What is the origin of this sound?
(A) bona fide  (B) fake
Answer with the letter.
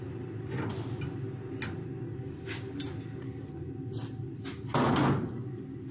A